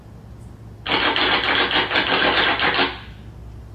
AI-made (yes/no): no